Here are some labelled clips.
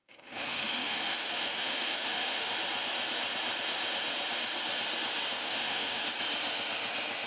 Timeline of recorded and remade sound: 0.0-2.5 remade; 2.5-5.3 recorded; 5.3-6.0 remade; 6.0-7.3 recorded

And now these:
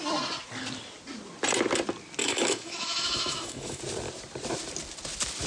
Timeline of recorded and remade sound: 0.0-2.2 recorded; 2.2-3.8 remade; 3.8-5.5 recorded